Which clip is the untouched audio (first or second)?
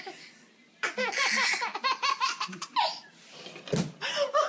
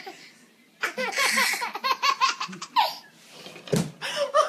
first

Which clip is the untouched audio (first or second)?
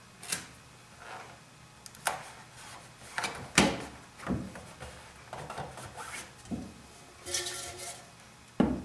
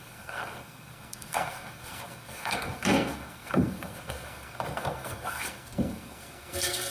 first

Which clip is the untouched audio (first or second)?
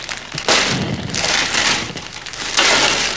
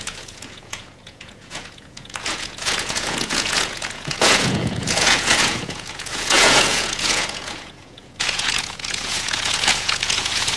first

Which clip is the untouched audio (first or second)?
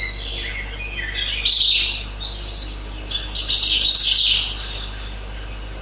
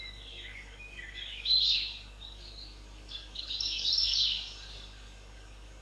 first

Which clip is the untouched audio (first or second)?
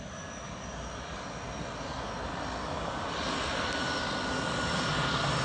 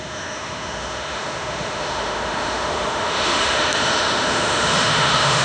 first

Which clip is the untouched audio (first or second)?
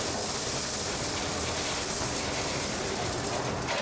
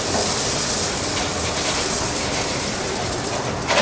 first